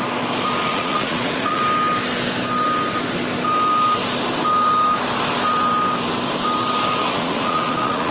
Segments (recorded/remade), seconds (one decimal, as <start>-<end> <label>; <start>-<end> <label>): 0.0-0.7 recorded; 0.7-1.6 remade; 1.6-7.0 recorded; 7.0-8.1 remade